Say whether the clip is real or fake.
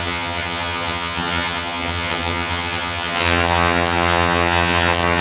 fake